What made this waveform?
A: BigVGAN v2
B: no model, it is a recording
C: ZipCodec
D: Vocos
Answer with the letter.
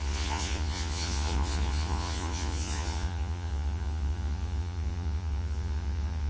D